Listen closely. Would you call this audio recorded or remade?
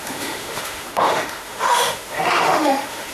remade